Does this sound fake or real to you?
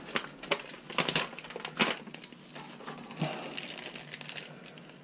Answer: real